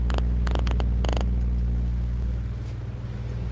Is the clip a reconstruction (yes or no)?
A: no